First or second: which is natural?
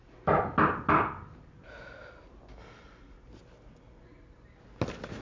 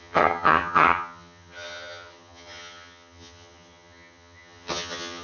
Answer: first